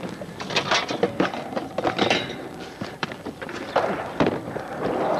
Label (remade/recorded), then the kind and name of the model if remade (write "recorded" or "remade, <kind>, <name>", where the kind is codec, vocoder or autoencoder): remade, vocoder, BigVGAN v2